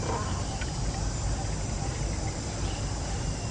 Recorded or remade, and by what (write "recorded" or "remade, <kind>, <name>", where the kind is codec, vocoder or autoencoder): recorded